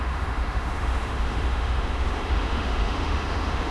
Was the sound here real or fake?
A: fake